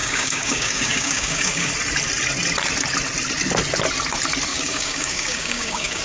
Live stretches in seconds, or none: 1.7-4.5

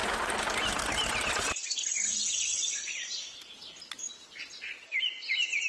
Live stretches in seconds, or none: 0.0-5.7

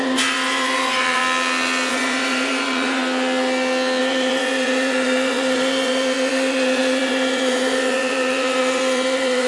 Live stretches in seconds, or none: 1.2-1.9; 3.0-4.0

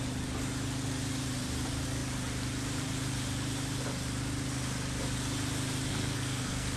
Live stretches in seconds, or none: 0.0-5.9

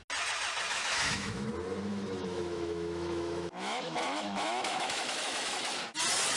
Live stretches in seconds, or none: 0.0-0.7; 1.5-1.9; 5.6-6.4